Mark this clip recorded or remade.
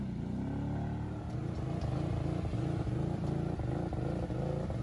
recorded